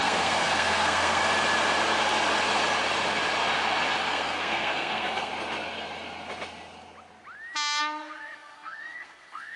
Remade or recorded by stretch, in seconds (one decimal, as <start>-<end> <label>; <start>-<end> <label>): 0.0-1.2 remade; 1.2-4.1 recorded; 4.1-5.3 remade; 5.3-7.8 recorded; 7.8-9.6 remade